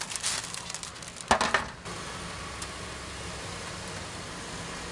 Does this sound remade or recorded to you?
recorded